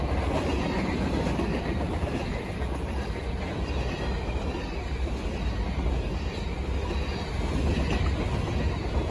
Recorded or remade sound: recorded